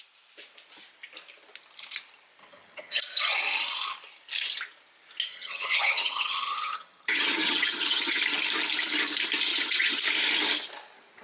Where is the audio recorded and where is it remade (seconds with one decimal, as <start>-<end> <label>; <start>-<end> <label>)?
0.0-2.4 recorded; 2.4-3.0 remade; 3.0-5.3 recorded; 5.3-8.2 remade; 8.2-9.5 recorded; 9.5-10.0 remade; 10.0-11.2 recorded